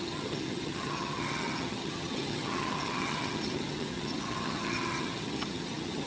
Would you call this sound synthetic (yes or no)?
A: yes